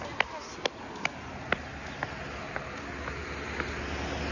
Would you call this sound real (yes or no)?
yes